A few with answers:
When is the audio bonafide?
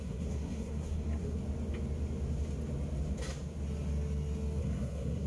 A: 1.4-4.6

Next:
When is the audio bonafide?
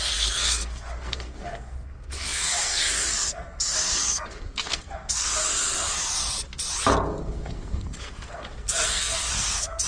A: 6.0-7.2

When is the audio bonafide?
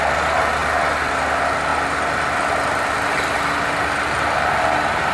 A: 0.0-5.1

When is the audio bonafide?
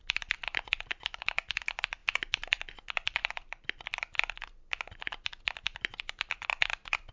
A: 0.0-7.1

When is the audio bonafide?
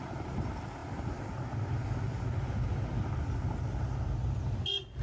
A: 0.0-5.0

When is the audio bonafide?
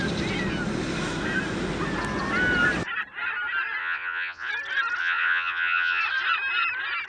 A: 0.0-3.8; 4.5-5.0; 6.0-7.1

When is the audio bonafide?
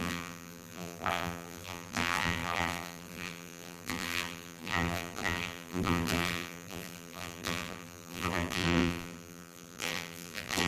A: none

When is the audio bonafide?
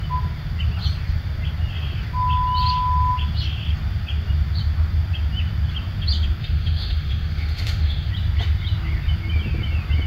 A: 0.0-6.4; 8.1-10.1